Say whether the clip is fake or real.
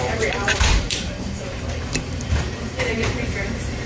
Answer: fake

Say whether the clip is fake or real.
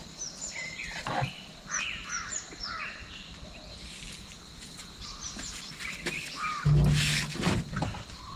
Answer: real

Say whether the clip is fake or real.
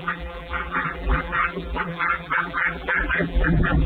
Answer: fake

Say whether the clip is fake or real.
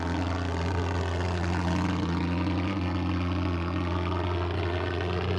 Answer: real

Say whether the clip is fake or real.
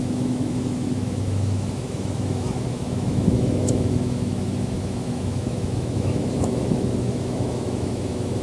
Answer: fake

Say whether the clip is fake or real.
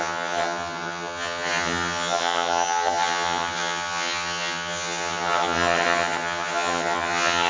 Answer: fake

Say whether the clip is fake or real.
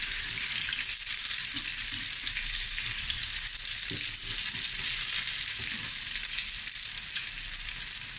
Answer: real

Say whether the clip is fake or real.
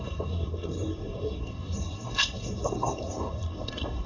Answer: fake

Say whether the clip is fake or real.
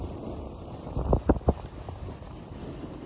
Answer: real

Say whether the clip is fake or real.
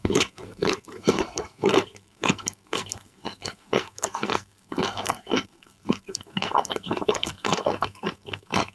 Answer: fake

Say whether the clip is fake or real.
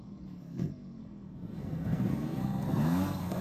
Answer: fake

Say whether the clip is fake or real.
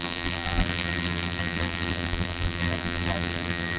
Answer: fake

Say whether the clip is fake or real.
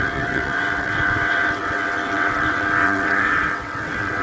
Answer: fake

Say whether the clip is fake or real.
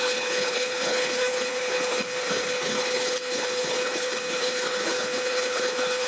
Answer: fake